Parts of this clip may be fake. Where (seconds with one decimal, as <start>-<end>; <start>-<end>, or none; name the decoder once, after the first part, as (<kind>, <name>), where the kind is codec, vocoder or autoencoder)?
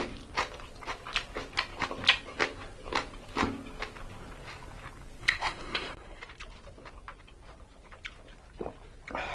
5.2-6.2 (codec, SNAC)